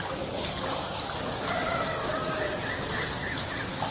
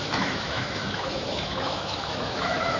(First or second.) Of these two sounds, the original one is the first